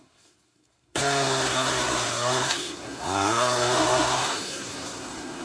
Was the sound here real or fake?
fake